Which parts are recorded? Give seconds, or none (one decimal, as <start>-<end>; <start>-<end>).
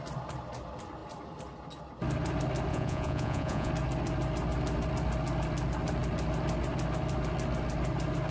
0.0-2.7; 3.7-8.3